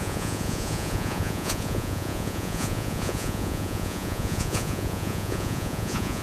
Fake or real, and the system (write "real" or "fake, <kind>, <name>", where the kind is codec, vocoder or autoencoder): fake, vocoder, Vocos